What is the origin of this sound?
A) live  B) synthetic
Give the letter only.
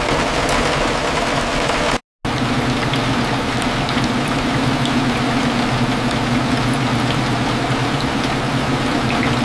A